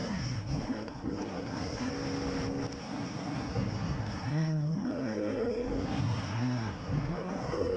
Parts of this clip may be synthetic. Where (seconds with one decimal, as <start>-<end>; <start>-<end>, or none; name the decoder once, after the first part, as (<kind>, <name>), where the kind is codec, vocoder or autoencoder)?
0.0-1.9 (codec, SNAC); 2.8-7.8